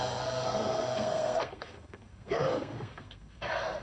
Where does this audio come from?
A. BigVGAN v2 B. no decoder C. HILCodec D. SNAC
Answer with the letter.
D